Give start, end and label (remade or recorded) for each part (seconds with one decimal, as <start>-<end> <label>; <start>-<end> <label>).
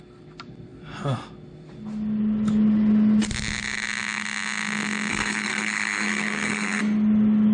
0.0-5.1 recorded; 5.1-6.8 remade; 6.8-7.5 recorded